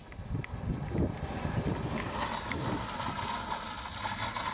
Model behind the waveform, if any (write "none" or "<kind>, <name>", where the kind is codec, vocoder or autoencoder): none